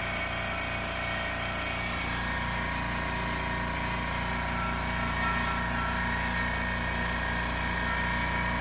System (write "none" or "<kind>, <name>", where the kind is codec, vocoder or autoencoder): none